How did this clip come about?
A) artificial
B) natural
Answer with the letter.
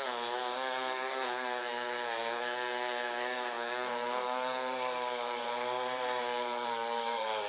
A